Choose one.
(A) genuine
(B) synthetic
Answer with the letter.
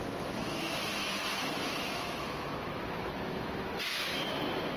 B